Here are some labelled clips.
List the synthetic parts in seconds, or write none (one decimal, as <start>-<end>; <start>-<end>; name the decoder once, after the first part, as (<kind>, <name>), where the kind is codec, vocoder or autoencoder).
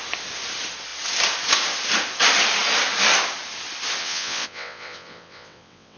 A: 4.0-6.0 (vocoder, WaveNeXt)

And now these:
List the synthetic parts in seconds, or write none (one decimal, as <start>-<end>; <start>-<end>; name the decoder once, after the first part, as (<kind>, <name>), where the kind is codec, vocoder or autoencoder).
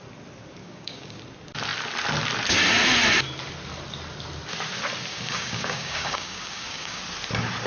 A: 0.6-1.2 (codec, DAC); 5.1-7.0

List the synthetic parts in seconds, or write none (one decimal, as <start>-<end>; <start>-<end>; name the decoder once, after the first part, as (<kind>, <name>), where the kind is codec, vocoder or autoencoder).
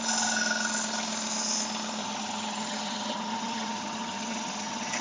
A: 2.0-5.0 (vocoder, HiFi-GAN)